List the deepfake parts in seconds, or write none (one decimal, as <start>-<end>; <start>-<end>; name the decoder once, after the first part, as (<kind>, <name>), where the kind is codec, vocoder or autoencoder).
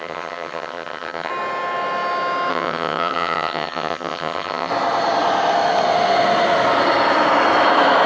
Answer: 0.0-1.3 (vocoder, HiFi-GAN); 2.5-4.7